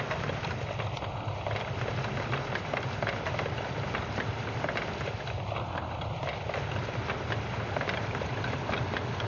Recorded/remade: recorded